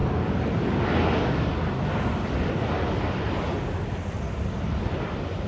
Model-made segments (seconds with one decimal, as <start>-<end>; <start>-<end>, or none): none